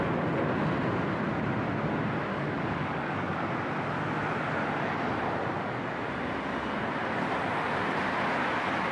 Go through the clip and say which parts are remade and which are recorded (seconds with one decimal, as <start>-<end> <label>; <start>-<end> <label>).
0.0-2.3 recorded; 2.3-3.5 remade; 3.5-8.9 recorded